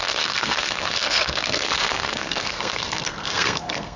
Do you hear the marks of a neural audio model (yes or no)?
yes